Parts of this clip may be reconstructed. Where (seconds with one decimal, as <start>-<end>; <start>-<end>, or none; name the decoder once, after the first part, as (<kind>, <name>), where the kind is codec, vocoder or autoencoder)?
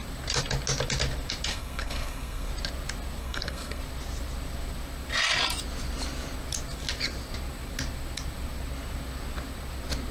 1.5-2.5 (codec, SNAC); 3.2-3.8